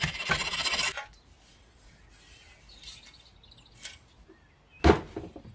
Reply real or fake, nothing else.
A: real